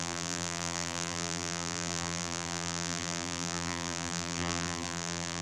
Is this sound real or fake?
fake